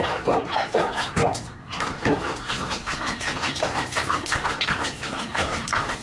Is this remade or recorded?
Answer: remade